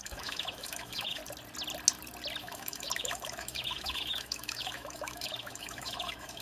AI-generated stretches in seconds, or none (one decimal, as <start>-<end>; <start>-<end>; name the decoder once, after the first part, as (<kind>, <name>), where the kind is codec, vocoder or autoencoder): 0.0-1.2 (autoencoder, DAC-VAE); 2.4-6.4